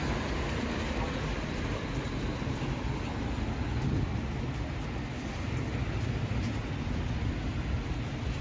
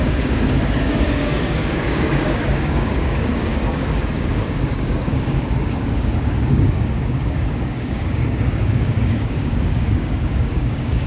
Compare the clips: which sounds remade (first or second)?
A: second